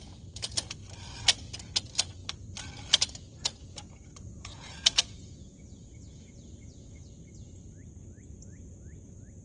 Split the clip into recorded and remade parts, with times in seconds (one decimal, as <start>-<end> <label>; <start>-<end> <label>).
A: 0.0-3.7 recorded; 3.7-7.1 remade; 7.1-9.4 recorded